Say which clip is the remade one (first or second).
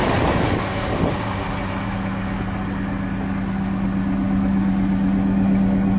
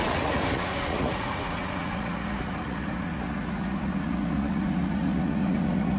second